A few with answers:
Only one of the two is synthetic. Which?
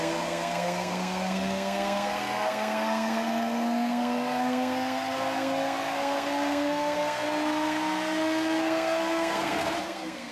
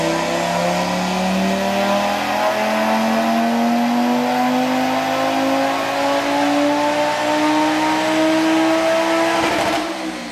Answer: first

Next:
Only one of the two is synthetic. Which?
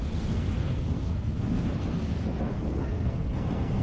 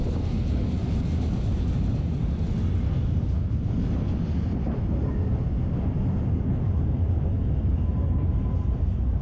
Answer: first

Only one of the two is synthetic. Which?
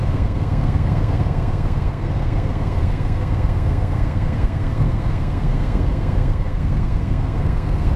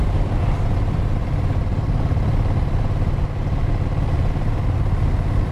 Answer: first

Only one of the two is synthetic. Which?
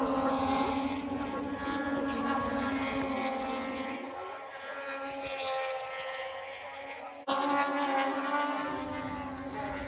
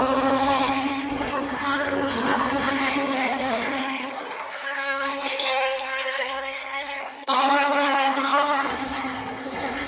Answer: second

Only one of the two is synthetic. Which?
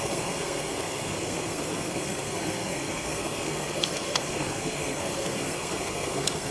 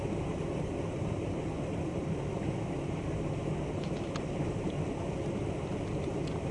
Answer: first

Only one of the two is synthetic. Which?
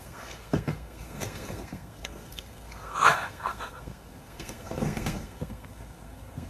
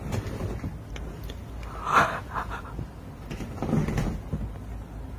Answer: first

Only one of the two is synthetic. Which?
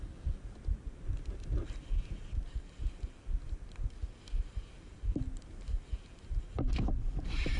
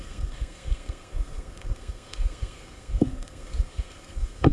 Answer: second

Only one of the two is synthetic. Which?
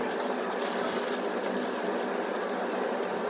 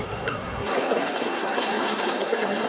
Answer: second